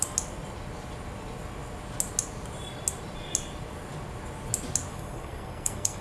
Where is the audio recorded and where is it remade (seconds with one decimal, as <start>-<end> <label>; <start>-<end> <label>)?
0.0-4.9 recorded; 4.9-6.0 remade